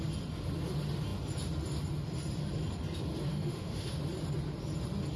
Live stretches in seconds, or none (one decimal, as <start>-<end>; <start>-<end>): 0.0-3.3; 4.0-5.2